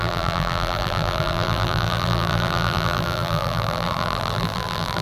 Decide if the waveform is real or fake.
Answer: fake